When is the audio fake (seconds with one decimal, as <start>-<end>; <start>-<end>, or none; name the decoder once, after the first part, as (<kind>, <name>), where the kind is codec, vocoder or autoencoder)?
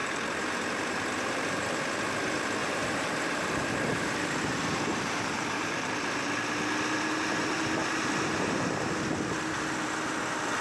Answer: 0.0-1.8 (vocoder, BigVGAN v2); 2.6-5.9; 7.8-8.9